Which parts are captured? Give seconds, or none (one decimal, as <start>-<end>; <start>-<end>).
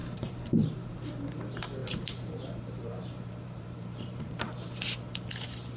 1.1-1.8; 4.5-5.8